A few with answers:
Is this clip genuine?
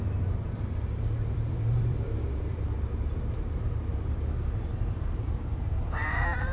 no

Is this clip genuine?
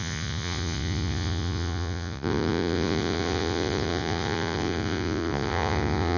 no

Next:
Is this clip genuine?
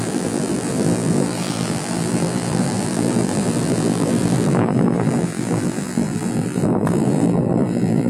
no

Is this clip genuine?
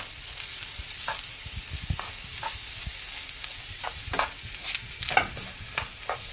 yes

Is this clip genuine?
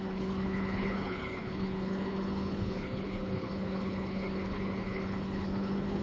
no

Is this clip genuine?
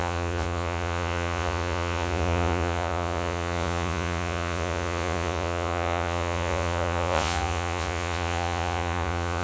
no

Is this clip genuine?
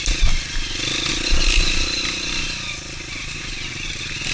yes